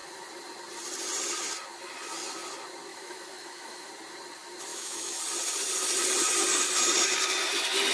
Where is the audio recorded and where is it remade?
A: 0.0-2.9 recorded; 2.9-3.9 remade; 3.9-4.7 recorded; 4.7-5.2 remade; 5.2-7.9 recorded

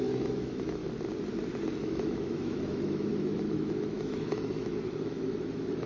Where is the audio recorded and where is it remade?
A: 0.0-0.8 remade; 0.8-1.8 recorded; 1.8-5.9 remade

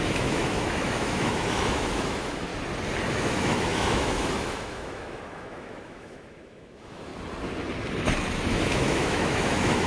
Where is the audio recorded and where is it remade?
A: 0.0-2.5 remade; 2.5-3.1 recorded; 3.1-7.1 remade; 7.1-8.5 recorded; 8.5-9.9 remade

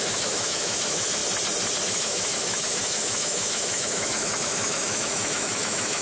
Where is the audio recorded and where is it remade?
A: 0.0-1.2 remade; 1.2-1.8 recorded; 1.8-6.0 remade

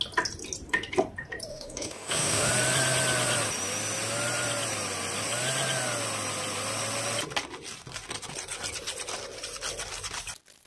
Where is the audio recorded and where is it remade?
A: 0.0-1.5 recorded; 1.5-2.5 remade; 2.5-10.7 recorded

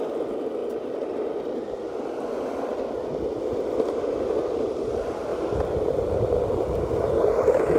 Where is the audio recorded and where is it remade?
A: 0.0-7.8 recorded

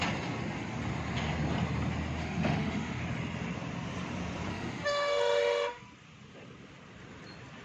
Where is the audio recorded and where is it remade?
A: 0.0-2.2 recorded; 2.2-3.0 remade; 3.0-4.5 recorded; 4.5-5.8 remade; 5.8-7.6 recorded